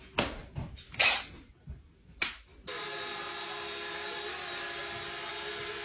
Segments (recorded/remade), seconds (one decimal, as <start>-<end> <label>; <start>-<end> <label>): 0.0-0.4 recorded; 0.4-1.0 remade; 1.0-5.8 recorded